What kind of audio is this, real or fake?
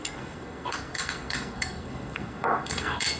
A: fake